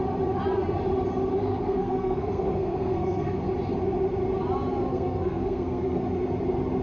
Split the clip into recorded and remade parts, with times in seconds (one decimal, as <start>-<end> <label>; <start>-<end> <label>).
0.0-1.3 recorded; 1.3-3.4 remade; 3.4-4.9 recorded; 4.9-6.0 remade; 6.0-6.8 recorded

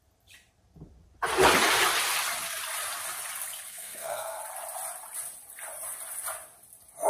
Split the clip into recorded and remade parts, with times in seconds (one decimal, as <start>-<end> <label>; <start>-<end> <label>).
0.0-3.7 recorded; 3.7-4.4 remade; 4.4-7.1 recorded

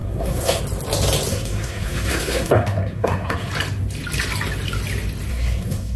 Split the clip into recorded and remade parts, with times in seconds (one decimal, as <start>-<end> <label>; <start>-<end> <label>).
0.0-0.6 remade; 0.6-1.3 recorded; 1.3-3.5 remade; 3.5-5.3 recorded; 5.3-6.0 remade

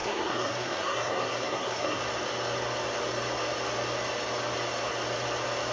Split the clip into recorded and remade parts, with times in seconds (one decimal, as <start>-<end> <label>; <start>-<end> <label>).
0.0-2.0 remade; 2.0-5.7 recorded

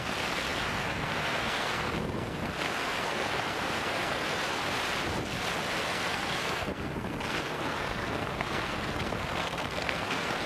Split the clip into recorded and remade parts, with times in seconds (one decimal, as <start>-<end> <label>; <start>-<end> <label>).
0.0-4.6 remade; 4.6-5.8 recorded; 5.8-10.5 remade